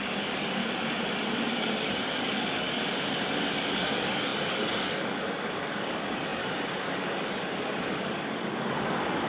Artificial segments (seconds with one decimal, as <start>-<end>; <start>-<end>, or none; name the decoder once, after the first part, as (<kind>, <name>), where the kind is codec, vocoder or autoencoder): 0.0-0.6 (codec, DAC); 1.5-2.8; 3.5-9.3